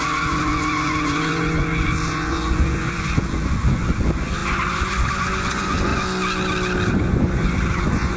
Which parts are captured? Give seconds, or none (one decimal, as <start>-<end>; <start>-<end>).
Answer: 5.9-6.9